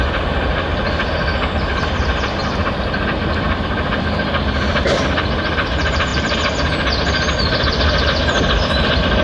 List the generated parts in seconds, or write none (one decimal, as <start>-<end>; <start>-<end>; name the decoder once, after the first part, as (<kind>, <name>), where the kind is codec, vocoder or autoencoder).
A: 0.0-0.5 (vocoder, BigVGAN v2); 1.5-6.1; 7.3-9.2